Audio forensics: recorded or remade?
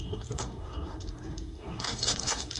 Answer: remade